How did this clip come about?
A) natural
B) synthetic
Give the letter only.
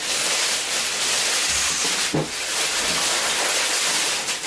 A